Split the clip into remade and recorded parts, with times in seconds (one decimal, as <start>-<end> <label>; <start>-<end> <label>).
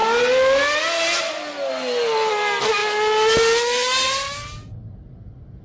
0.0-5.6 recorded